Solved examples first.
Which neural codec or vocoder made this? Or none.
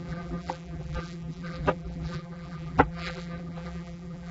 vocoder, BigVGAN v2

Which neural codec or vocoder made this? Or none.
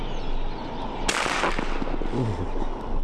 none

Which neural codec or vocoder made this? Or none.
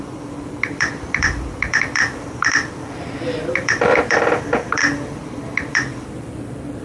vocoder, BigVGAN v2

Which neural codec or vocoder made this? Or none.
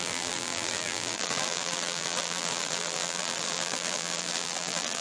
vocoder, BigVGAN v2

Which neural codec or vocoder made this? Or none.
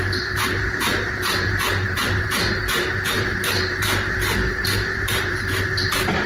vocoder, BigVGAN v2